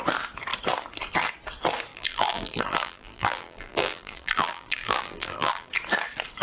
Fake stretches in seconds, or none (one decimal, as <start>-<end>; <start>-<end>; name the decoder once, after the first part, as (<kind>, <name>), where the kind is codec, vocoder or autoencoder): 1.9-5.7 (vocoder, BigVGAN v2)